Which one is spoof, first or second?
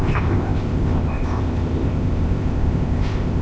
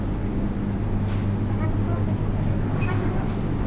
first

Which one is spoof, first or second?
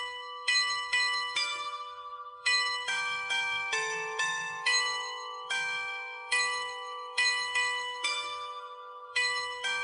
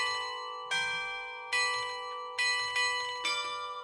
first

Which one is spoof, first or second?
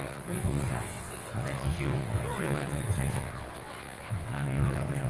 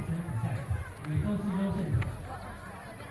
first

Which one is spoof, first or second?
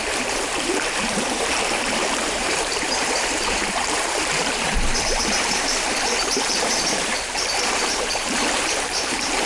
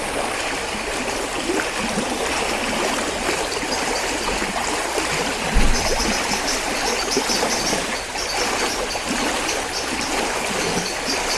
first